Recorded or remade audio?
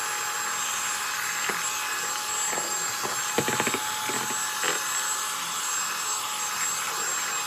recorded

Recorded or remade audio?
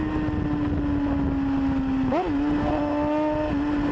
recorded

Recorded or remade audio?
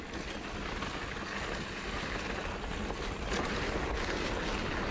recorded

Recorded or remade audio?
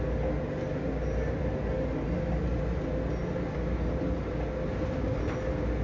recorded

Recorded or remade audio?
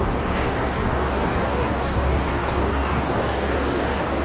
remade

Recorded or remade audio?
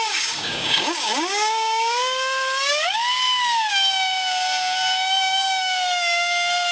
remade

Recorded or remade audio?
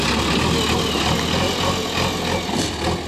recorded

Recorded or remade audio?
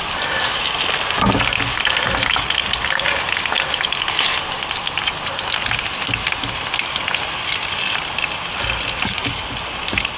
recorded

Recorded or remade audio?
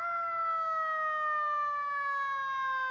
recorded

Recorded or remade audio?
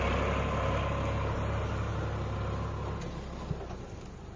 recorded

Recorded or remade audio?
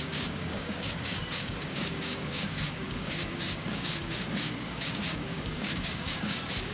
remade